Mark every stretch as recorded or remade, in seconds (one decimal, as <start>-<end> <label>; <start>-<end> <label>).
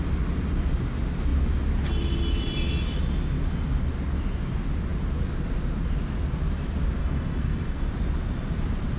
0.0-7.0 recorded; 7.0-7.9 remade; 7.9-9.0 recorded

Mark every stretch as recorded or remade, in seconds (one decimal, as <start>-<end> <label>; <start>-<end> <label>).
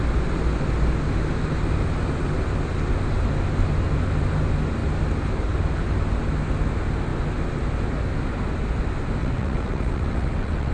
0.0-9.2 recorded; 9.2-10.7 remade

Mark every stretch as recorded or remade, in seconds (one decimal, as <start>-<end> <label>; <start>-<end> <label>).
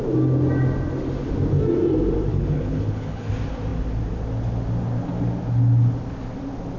0.0-2.3 recorded; 2.3-3.3 remade; 3.3-6.8 recorded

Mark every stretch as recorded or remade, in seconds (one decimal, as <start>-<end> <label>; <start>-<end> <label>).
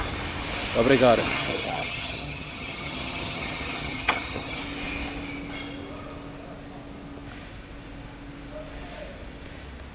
0.0-1.2 recorded; 1.2-4.6 remade; 4.6-9.9 recorded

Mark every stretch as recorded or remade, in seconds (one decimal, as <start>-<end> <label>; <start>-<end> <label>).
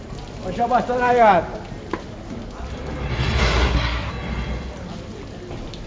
0.0-3.4 recorded; 3.4-4.1 remade; 4.1-5.9 recorded